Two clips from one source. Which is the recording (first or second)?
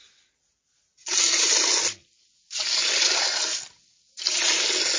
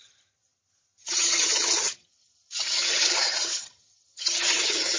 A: first